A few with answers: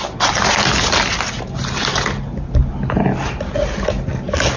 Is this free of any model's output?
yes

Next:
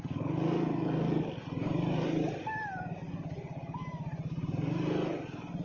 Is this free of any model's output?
yes